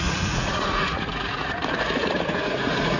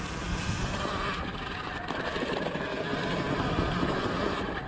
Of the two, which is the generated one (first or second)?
first